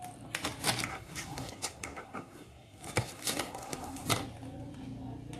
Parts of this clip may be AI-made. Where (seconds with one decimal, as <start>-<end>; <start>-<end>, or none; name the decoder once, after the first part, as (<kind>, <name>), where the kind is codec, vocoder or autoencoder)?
0.9-4.1 (codec, SNAC)

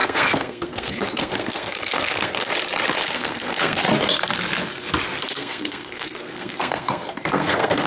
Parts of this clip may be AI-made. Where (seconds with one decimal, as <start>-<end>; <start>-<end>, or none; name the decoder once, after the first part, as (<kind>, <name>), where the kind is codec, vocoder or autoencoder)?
0.0-2.5 (codec, SNAC); 3.0-3.8; 5.2-7.9

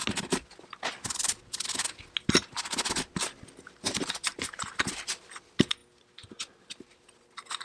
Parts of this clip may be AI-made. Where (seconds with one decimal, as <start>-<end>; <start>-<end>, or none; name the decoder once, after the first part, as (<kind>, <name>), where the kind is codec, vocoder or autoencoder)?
none

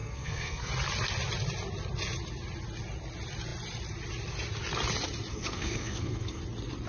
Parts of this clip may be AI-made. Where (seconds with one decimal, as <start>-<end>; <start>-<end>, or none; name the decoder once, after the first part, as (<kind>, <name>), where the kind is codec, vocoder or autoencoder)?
0.0-0.7 (codec, SNAC); 5.3-6.4

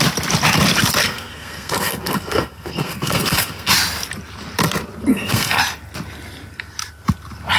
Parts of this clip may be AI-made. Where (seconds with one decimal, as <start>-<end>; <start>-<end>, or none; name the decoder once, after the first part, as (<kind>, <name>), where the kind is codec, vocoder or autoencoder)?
1.0-3.7 (codec, SNAC); 5.1-5.6

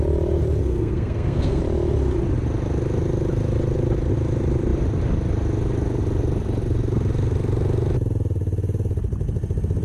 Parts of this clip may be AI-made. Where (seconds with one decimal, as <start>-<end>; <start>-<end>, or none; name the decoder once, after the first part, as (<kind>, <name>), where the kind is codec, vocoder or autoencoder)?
0.6-1.6 (codec, SNAC)

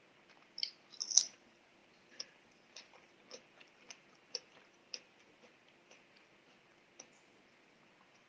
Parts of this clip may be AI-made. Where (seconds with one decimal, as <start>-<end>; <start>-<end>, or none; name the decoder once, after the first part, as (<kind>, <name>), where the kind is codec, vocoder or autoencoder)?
none

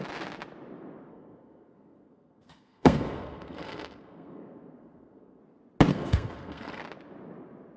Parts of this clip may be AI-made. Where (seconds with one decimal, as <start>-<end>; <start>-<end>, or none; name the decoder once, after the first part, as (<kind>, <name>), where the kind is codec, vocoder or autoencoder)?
1.1-5.4 (codec, SNAC); 5.9-6.8